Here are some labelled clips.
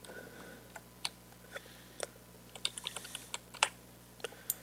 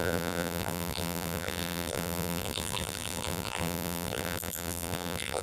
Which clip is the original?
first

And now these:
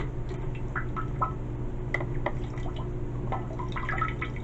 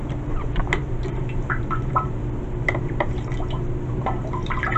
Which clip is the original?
first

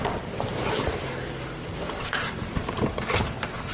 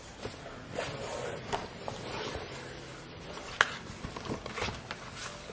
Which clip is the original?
second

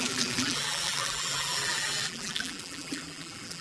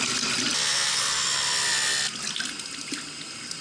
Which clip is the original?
second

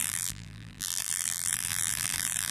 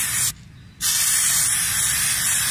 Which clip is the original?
second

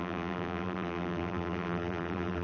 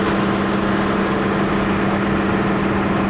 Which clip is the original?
second